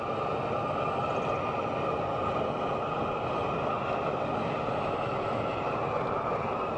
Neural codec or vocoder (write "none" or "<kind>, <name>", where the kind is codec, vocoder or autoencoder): none